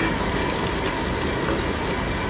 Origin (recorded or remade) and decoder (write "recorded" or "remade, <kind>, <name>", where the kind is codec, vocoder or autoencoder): recorded